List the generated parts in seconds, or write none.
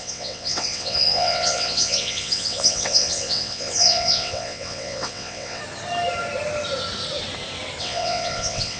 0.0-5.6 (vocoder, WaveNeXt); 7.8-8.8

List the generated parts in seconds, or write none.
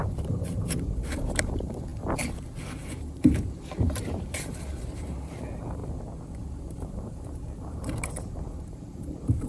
0.0-1.9 (vocoder, BigVGAN v2); 2.6-5.8; 6.7-9.5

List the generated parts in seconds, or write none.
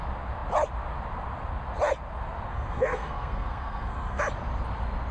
2.5-4.2 (codec, SNAC)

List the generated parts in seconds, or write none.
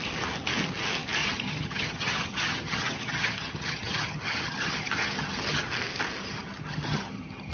1.2-5.7 (vocoder, HiFi-GAN); 6.2-7.5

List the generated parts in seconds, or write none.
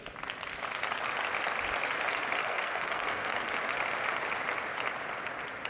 2.4-3.5 (codec, SNAC)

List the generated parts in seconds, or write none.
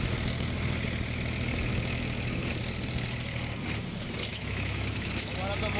1.7-2.6 (autoencoder, DAC-VAE); 4.3-5.3